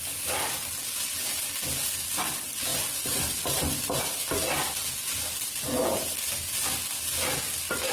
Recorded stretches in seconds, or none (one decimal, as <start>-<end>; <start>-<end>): 0.0-2.7; 4.0-7.9